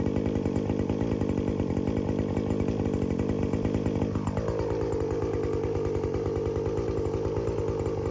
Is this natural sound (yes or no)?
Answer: yes